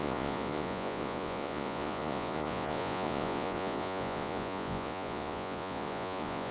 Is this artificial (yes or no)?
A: yes